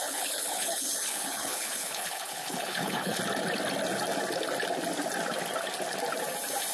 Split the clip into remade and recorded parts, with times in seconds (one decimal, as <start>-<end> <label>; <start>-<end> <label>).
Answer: 0.0-3.2 remade; 3.2-6.7 recorded